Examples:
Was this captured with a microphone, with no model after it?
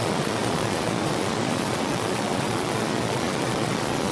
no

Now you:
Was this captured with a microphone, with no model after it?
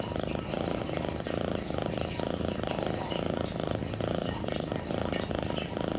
yes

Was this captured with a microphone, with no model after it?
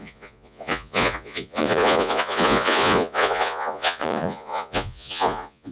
no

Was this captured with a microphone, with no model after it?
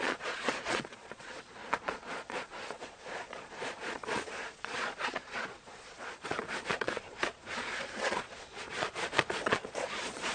no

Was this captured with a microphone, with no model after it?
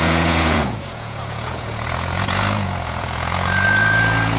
no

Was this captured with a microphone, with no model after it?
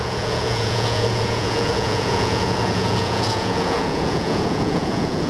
no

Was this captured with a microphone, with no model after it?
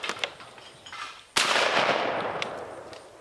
yes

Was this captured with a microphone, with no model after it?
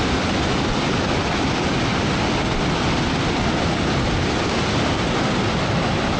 yes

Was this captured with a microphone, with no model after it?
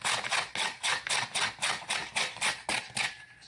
yes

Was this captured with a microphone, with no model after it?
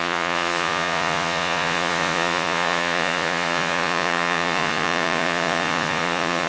no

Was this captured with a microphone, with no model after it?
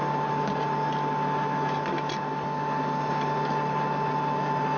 yes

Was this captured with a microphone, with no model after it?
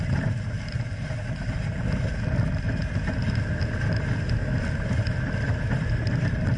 yes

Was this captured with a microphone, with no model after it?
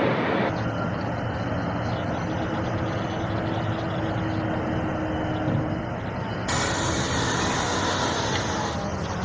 yes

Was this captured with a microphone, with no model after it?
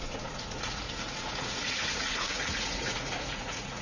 no